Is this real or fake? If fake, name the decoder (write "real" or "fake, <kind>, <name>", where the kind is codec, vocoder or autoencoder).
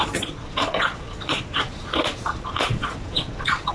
fake, vocoder, Vocos